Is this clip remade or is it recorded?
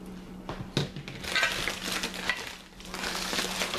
recorded